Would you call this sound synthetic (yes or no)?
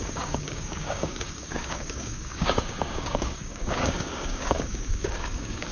yes